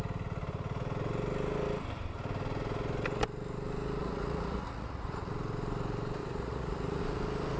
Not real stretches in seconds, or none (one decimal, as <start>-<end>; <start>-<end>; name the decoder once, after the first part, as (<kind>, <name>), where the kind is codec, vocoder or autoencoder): 4.0-5.3 (vocoder, Vocos); 6.2-7.0